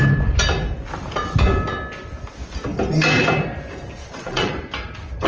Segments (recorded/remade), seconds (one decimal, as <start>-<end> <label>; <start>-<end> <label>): 0.0-4.0 recorded; 4.0-4.5 remade; 4.5-5.3 recorded